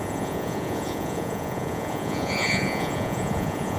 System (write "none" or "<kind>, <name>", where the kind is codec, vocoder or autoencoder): vocoder, Vocos